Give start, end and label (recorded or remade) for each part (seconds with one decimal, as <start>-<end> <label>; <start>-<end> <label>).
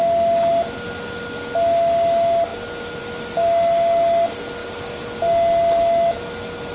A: 0.0-6.7 recorded